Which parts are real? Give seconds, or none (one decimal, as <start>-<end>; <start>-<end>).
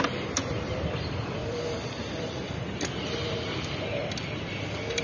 0.0-5.0